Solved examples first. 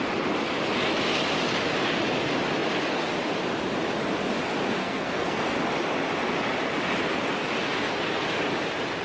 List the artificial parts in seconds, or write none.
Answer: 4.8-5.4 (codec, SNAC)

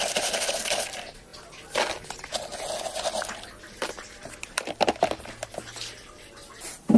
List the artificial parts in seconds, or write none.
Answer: none

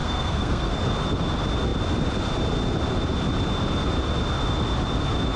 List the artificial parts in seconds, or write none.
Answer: 0.0-0.8 (codec, SNAC)

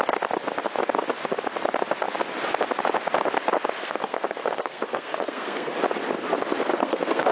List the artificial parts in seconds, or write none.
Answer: 3.8-5.7 (codec, SNAC); 6.7-7.3

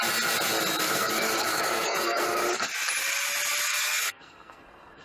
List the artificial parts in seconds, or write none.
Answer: 0.8-2.7 (codec, SNAC); 3.7-4.6

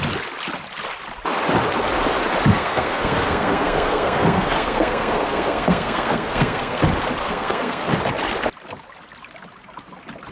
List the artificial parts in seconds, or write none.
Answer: 2.5-6.8 (codec, SNAC); 7.2-7.9